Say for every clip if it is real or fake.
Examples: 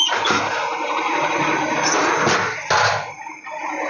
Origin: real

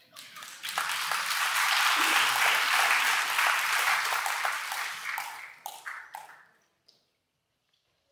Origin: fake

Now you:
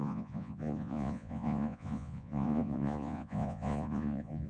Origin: fake